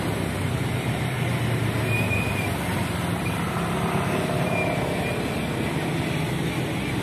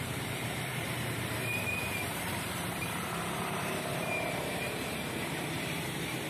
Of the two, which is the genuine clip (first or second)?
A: first